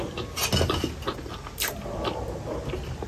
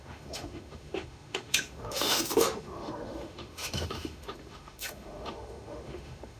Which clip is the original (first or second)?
first